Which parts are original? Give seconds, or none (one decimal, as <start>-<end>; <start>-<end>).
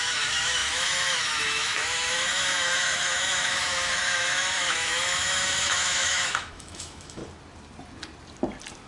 7.2-8.9